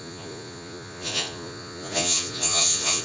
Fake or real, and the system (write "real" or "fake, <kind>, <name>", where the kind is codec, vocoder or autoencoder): fake, vocoder, Vocos